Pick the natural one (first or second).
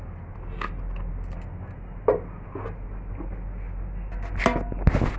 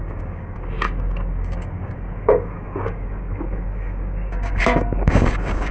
first